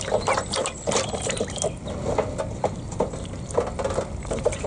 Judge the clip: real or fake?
real